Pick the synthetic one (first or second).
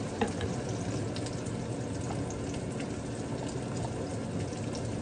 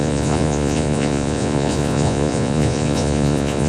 second